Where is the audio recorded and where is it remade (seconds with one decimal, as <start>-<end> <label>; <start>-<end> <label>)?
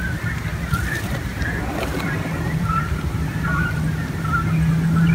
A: 0.0-0.5 recorded; 0.5-3.6 remade; 3.6-5.1 recorded